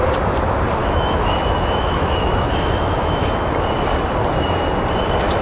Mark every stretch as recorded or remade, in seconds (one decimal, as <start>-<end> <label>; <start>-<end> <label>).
0.0-0.8 recorded; 0.8-3.2 remade; 3.2-5.4 recorded